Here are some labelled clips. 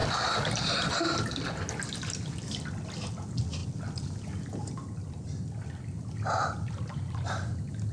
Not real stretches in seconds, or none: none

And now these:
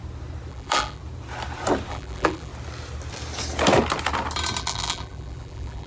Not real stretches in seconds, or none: 0.5-1.0 (vocoder, BigVGAN v2); 1.9-2.5; 4.6-5.9

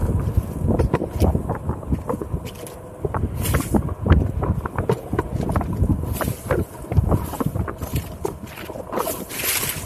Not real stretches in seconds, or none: 5.9-8.7 (vocoder, BigVGAN v2)